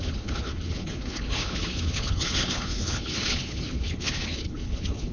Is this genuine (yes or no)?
no